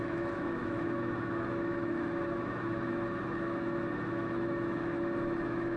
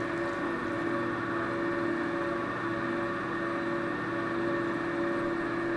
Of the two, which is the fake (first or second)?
first